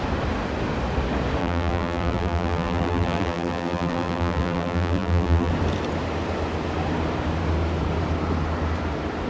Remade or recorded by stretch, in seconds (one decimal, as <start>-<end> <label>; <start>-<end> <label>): 0.0-1.4 recorded; 1.4-5.5 remade; 5.5-9.3 recorded